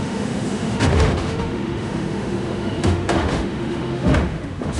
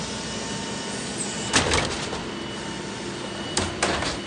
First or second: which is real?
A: second